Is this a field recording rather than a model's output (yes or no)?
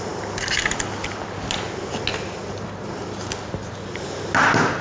yes